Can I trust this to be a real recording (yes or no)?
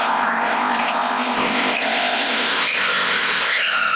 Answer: no